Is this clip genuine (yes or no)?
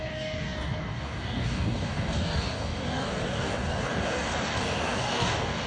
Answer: no